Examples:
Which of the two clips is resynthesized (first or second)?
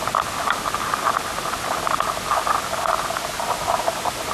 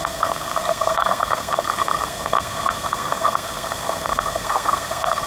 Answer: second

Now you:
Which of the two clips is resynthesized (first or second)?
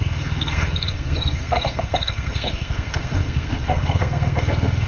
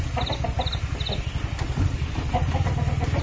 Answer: first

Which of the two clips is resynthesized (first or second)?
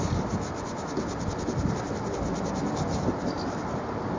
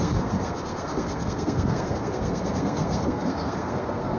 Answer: second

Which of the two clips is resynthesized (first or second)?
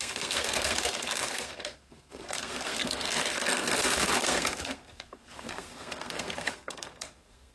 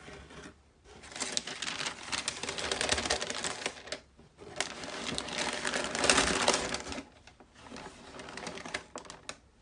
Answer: first